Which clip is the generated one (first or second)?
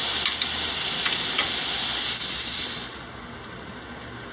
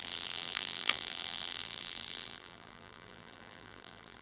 second